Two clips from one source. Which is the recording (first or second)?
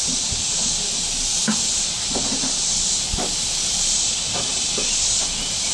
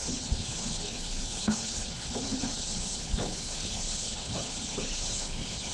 first